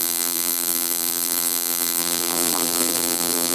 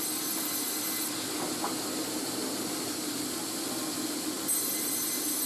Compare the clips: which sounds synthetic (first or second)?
first